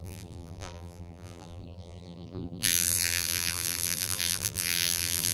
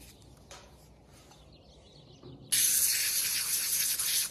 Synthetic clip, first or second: first